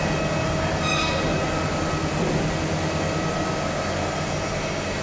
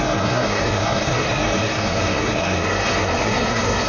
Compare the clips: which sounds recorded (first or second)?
first